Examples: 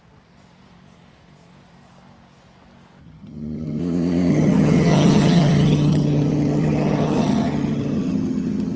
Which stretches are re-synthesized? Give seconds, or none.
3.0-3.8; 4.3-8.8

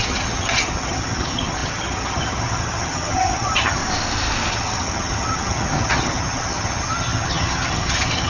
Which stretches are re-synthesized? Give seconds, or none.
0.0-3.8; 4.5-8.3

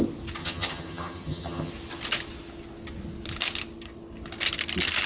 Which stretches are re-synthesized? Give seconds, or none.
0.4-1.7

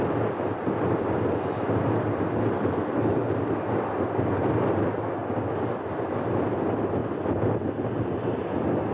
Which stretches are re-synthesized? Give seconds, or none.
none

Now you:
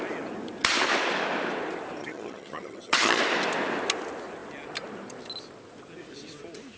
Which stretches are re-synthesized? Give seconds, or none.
2.0-3.2